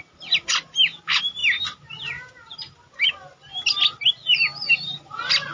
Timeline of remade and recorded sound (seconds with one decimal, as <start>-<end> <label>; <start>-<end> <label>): 0.0-5.5 recorded